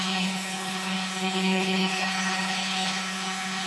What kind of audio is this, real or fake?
fake